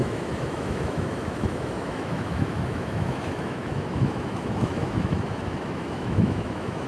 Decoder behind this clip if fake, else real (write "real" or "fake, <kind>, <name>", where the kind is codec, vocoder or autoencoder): fake, autoencoder, DAC-VAE